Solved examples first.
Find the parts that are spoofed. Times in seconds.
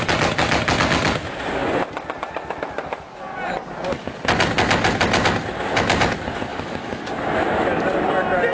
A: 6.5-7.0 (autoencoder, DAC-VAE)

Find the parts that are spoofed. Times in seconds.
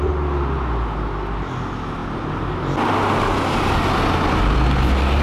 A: none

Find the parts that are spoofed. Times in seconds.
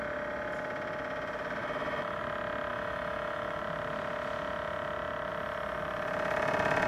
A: 1.6-2.2 (autoencoder, DAC-VAE); 2.7-3.6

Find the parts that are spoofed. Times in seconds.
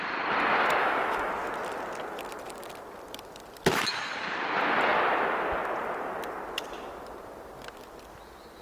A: 0.8-1.3 (autoencoder, DAC-VAE)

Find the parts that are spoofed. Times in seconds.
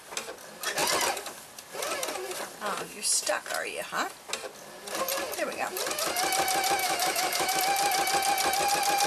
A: 6.8-7.6 (autoencoder, DAC-VAE)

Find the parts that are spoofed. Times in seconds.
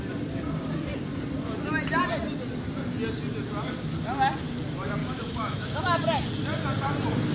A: 5.0-5.8 (autoencoder, DAC-VAE)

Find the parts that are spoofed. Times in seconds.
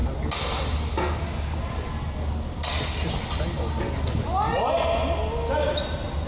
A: none